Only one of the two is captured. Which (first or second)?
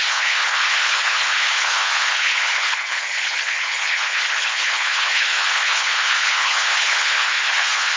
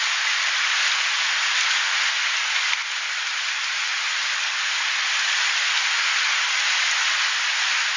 second